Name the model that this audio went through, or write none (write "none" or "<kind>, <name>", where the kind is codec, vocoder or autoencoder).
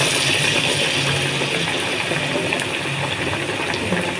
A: none